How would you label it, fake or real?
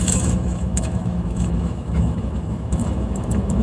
fake